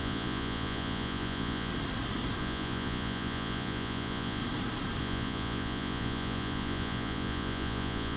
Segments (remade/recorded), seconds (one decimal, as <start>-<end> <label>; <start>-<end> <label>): 0.0-1.7 remade; 1.7-2.4 recorded; 2.4-4.4 remade; 4.4-5.0 recorded; 5.0-8.2 remade